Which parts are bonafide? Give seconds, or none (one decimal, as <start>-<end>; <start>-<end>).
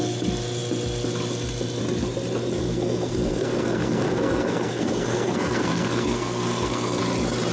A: 0.0-2.5; 7.0-7.5